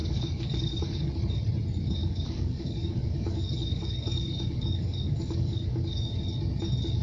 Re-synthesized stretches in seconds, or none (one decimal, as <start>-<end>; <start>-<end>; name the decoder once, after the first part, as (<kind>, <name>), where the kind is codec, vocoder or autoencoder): 0.0-1.1 (codec, DAC); 2.0-6.2